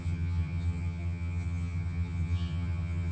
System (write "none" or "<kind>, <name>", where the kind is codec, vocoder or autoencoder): vocoder, HiFi-GAN